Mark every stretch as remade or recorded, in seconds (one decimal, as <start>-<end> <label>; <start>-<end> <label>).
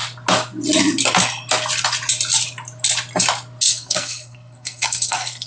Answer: 0.0-3.7 recorded; 3.7-5.5 remade